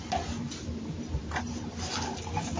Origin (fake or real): real